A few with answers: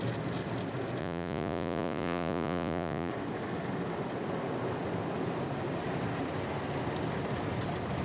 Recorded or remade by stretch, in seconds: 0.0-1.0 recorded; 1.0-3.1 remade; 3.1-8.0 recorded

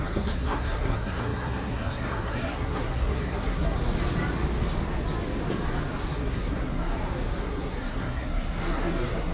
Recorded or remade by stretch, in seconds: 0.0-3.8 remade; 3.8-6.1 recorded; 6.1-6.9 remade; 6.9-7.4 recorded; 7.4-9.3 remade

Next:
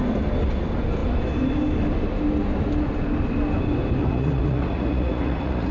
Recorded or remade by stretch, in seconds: 0.0-4.0 recorded; 4.0-5.7 remade

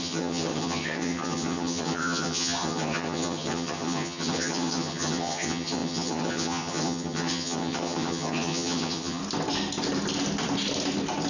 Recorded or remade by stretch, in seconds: 0.0-9.2 remade; 9.2-11.3 recorded

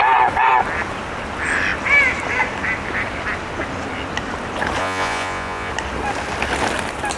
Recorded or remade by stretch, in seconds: 0.0-4.8 recorded; 4.8-5.7 remade; 5.7-7.2 recorded